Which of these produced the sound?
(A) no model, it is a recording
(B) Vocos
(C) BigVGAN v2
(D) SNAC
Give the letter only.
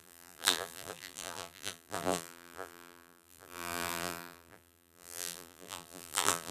C